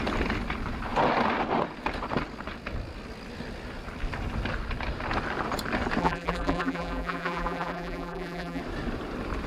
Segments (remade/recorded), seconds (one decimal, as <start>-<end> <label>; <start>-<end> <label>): 0.0-6.0 recorded; 6.0-8.6 remade; 8.6-9.5 recorded